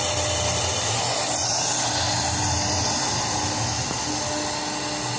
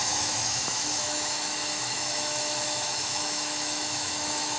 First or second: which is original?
first